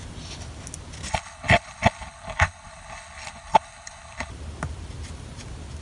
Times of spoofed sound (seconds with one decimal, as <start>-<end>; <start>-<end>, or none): 1.1-4.3